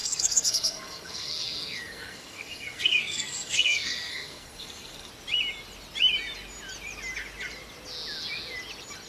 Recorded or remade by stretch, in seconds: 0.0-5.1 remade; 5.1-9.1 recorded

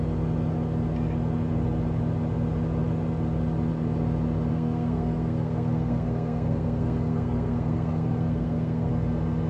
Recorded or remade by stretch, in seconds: 0.0-4.5 recorded; 4.5-8.9 remade; 8.9-9.5 recorded

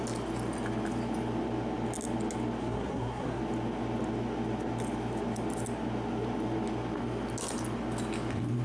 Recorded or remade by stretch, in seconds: 0.0-2.6 recorded; 2.6-3.4 remade; 3.4-8.6 recorded

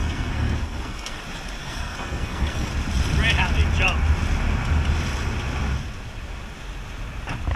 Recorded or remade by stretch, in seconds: 0.0-1.2 remade; 1.2-1.6 recorded; 1.6-2.7 remade; 2.7-7.6 recorded